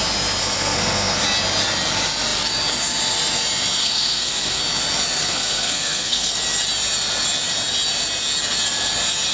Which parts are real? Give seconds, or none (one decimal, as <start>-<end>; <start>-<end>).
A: 0.0-0.4; 1.2-3.8; 4.6-5.2; 6.3-9.3